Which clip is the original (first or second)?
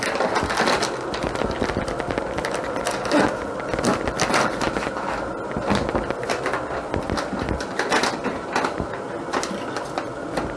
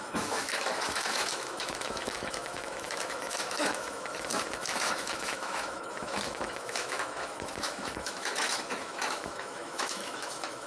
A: first